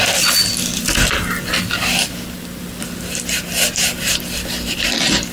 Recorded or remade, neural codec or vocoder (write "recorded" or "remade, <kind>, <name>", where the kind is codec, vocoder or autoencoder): recorded